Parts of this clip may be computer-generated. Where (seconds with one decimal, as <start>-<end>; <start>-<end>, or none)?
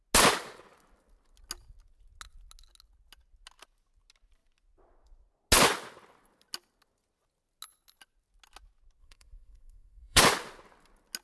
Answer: 9.0-10.2